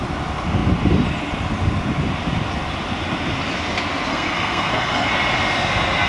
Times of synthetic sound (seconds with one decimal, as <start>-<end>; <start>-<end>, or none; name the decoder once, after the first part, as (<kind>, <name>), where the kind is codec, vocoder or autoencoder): 4.1-5.1 (codec, SNAC)